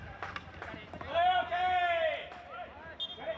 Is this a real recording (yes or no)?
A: yes